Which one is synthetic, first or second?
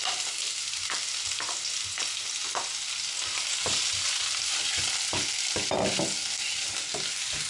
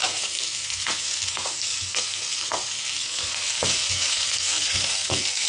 second